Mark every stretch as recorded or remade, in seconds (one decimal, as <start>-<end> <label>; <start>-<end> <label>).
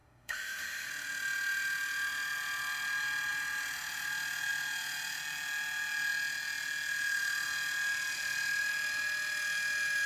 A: 0.0-0.9 remade; 0.9-10.1 recorded